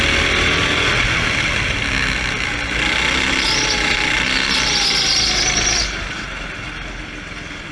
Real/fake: real